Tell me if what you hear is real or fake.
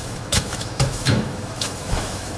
fake